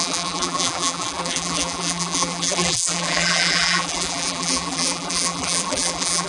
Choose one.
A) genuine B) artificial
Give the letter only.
B